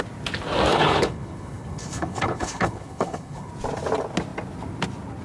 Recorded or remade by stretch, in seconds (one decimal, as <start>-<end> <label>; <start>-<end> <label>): 0.0-0.7 recorded; 0.7-3.5 remade; 3.5-5.2 recorded